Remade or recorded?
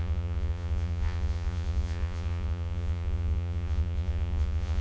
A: remade